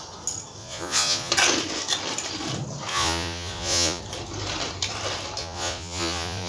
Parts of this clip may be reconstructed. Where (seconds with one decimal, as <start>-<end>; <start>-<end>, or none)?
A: 0.6-1.3; 2.9-4.0; 5.4-6.5